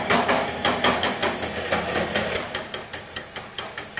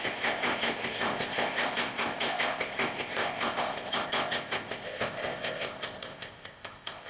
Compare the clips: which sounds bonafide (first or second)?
first